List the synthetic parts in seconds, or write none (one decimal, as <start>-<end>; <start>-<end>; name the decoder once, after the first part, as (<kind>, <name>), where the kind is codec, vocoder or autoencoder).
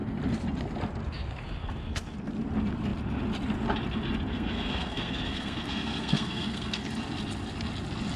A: 4.3-6.8 (codec, SNAC)